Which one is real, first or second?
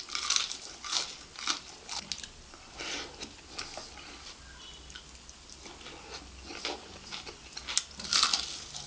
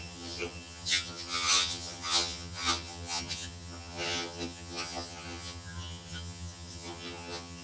first